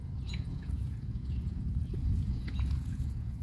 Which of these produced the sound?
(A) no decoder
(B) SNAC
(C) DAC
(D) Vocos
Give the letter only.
D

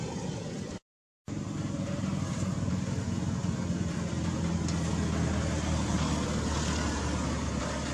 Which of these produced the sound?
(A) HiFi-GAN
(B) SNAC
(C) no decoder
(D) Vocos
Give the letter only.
C